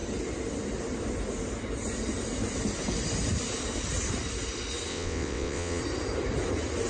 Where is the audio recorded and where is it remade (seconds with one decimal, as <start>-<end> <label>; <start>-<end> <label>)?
0.0-4.9 recorded; 4.9-5.8 remade; 5.8-6.9 recorded